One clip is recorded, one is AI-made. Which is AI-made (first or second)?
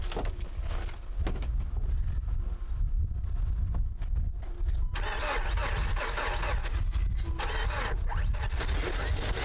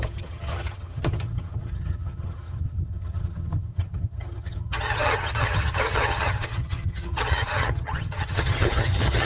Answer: second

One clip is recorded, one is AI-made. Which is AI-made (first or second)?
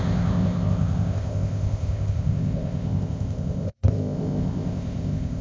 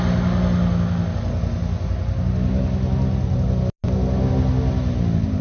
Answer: first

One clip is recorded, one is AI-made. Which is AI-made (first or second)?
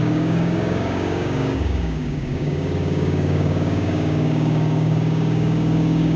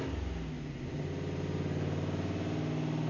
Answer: first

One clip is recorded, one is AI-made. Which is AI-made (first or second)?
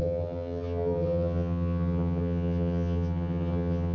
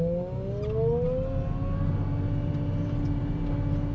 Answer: first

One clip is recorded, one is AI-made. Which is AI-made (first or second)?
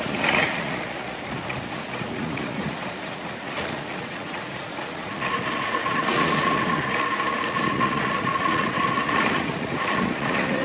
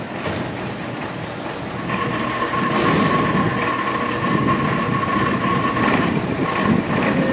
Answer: first